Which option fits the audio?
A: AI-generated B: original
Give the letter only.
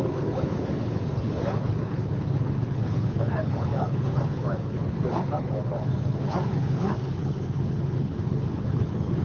A